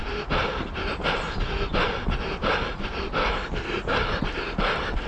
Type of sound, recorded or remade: recorded